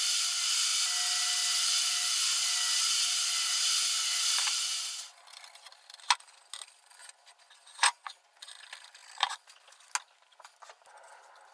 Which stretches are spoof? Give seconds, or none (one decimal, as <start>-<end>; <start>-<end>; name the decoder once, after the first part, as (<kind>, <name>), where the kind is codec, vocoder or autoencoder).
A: 7.0-8.5 (vocoder, Vocos)